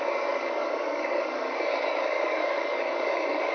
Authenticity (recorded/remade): remade